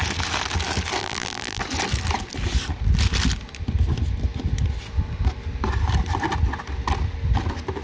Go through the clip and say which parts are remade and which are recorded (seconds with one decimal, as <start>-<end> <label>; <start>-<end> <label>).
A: 0.0-1.0 recorded; 1.0-1.6 remade; 1.6-7.8 recorded